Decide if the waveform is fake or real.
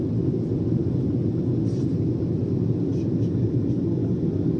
real